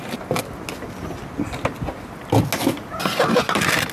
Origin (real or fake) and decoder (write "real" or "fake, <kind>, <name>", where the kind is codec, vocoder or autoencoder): real